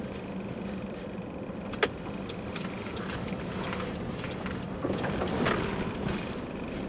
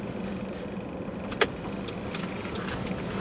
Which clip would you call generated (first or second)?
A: first